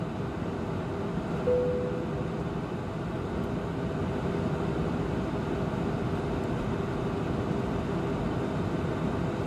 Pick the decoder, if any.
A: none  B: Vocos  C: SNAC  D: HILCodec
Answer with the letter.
A